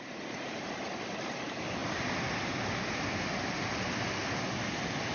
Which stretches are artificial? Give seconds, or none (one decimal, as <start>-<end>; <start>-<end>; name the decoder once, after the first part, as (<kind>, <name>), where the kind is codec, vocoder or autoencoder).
none